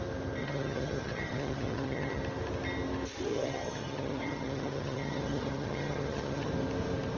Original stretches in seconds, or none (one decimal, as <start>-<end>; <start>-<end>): 0.0-0.4; 2.2-3.3; 6.5-7.2